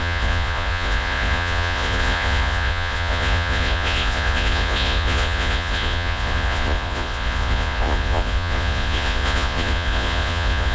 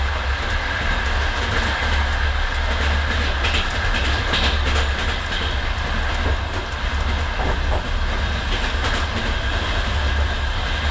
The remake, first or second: first